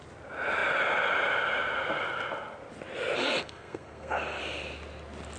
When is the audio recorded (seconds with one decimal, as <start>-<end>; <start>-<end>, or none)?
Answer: 0.0-3.2; 4.4-5.4